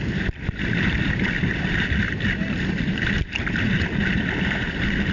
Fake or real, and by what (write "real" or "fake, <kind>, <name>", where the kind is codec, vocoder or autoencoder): fake, vocoder, BigVGAN v2